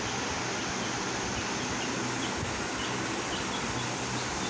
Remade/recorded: recorded